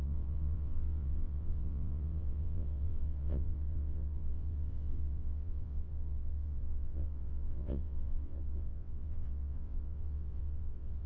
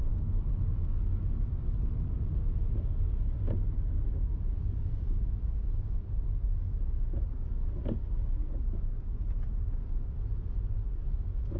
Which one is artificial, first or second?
first